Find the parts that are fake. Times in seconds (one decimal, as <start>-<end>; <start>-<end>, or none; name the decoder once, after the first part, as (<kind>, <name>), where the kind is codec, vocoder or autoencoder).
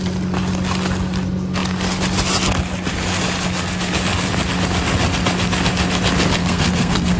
6.4-7.2 (codec, SNAC)